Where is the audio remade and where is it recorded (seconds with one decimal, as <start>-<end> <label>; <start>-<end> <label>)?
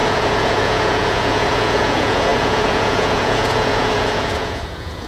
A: 0.0-5.1 remade